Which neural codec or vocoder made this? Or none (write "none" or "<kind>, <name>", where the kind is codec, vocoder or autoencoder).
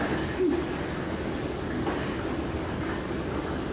none